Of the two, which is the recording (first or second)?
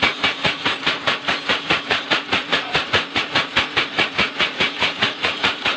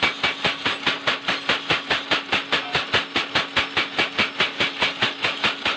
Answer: second